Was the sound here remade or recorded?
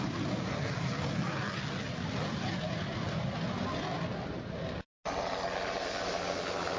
recorded